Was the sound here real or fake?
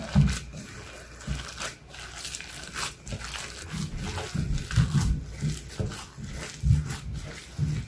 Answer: real